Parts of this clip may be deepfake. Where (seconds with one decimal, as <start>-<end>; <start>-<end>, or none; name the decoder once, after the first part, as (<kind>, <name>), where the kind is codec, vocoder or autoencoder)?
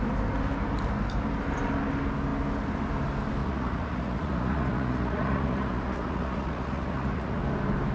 3.4-7.4 (vocoder, Vocos)